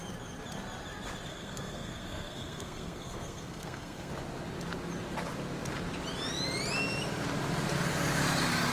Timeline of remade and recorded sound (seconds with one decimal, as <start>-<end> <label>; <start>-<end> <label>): 0.0-1.3 recorded; 1.3-4.1 remade; 4.1-8.7 recorded